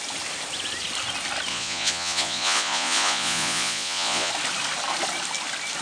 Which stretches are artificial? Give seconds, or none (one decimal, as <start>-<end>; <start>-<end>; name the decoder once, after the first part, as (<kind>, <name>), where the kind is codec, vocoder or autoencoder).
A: 1.5-4.3 (vocoder, Vocos)